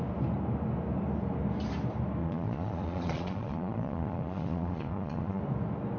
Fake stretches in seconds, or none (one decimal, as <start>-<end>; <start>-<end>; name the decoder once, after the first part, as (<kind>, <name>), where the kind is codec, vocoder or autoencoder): 2.2-5.4 (vocoder, Vocos)